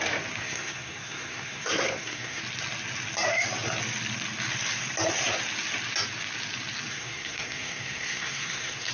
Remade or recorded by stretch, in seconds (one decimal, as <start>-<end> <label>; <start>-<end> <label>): 0.0-0.4 recorded; 0.4-2.4 remade; 2.4-6.9 recorded; 6.9-8.9 remade

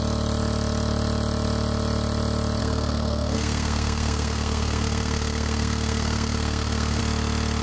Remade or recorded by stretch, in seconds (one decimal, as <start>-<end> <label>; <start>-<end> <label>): 0.0-2.6 recorded; 2.6-7.0 remade; 7.0-7.6 recorded

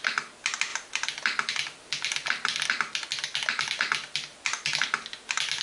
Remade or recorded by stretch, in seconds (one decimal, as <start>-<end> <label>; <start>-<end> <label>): 0.0-5.6 recorded

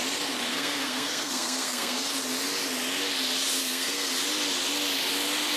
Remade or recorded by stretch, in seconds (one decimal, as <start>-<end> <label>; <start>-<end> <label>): 0.0-0.5 recorded; 0.5-2.1 remade; 2.1-3.6 recorded; 3.6-4.1 remade; 4.1-5.6 recorded

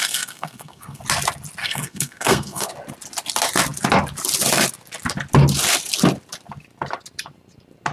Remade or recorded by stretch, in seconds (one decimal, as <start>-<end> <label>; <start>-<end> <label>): 0.0-1.0 remade; 1.0-1.6 recorded; 1.6-2.7 remade; 2.7-7.9 recorded

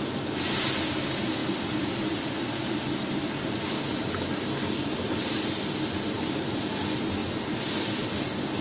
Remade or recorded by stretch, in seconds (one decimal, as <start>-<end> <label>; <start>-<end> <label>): 0.0-8.6 recorded